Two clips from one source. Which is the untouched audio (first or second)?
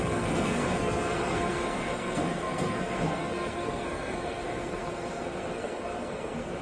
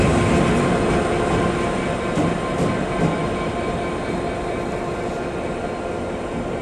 second